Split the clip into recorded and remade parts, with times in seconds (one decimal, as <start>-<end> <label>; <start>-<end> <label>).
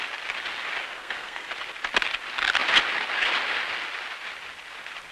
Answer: 0.0-1.0 recorded; 1.0-1.5 remade; 1.5-5.1 recorded